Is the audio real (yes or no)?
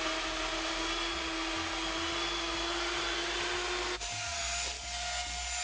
yes